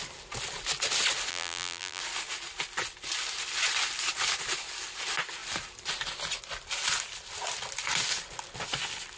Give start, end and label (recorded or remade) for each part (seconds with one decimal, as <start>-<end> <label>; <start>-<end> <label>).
0.0-1.3 recorded; 1.3-2.0 remade; 2.0-9.2 recorded